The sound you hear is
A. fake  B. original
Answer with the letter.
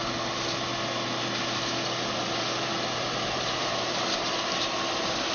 B